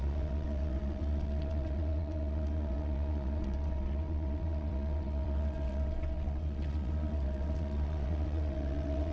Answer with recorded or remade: remade